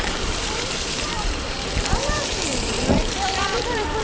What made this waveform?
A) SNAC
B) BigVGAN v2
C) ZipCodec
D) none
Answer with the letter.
B